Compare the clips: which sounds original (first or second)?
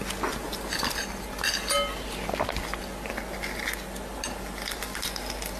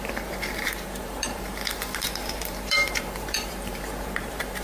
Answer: first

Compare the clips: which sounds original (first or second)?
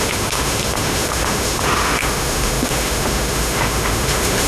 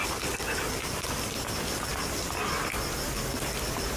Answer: second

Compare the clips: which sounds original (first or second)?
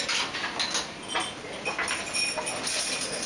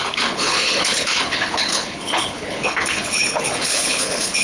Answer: first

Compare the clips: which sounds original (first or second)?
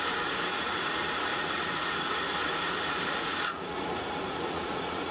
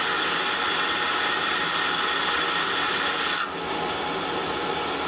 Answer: second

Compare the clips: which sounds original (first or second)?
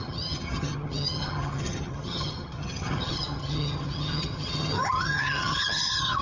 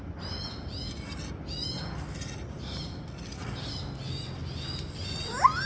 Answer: second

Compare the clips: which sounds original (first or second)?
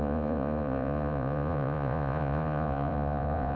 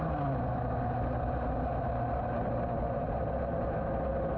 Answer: second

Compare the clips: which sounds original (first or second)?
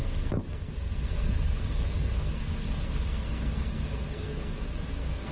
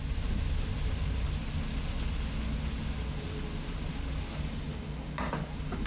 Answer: second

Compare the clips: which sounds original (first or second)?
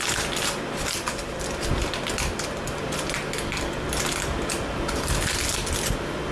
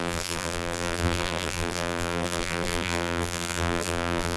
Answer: first